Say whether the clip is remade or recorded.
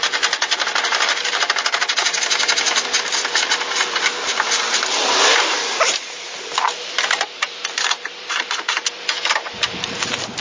remade